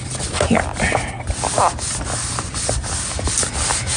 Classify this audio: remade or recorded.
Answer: recorded